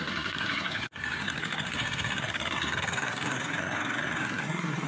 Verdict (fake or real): fake